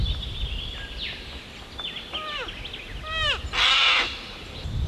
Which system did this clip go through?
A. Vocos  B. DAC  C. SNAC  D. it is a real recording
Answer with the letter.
D